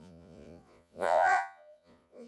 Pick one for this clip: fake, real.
fake